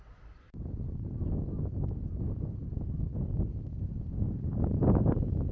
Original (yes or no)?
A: yes